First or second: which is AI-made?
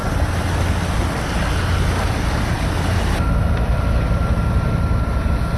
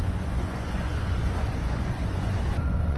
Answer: second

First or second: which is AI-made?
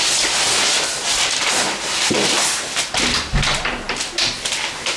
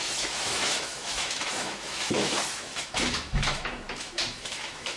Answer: second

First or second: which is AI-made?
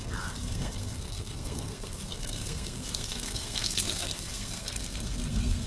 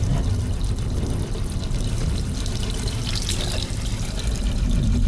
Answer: first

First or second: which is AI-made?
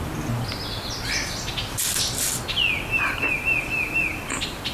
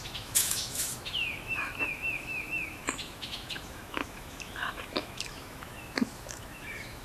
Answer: second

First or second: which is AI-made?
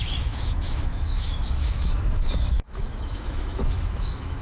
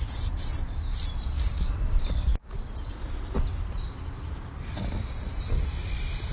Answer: first